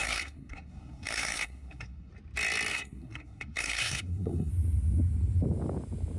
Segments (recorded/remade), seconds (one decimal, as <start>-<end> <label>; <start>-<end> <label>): 0.0-2.1 remade; 2.1-2.7 recorded; 2.7-4.5 remade; 4.5-6.2 recorded